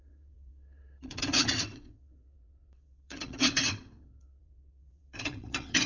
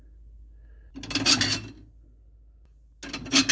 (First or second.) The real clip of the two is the second